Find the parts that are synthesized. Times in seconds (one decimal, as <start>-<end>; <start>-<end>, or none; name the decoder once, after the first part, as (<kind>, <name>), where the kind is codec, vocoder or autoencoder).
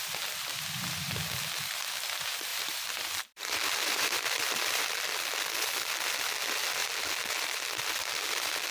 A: 2.5-4.8 (vocoder, BigVGAN v2)